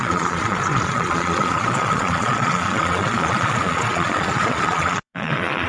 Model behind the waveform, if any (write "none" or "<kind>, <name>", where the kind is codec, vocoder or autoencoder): vocoder, Vocos